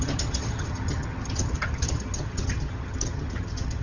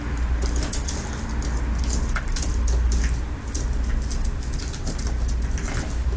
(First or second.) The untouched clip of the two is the second